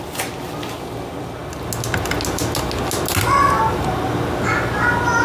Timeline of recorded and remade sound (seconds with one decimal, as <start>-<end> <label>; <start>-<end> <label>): 0.0-5.2 recorded